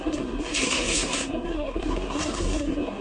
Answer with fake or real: fake